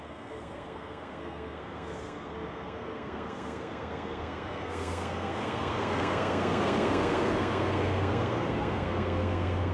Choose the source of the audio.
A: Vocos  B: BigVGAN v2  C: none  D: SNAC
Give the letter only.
D